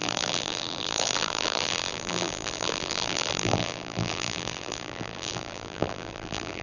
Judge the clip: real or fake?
fake